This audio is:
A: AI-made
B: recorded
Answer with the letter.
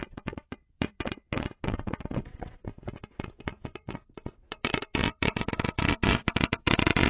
A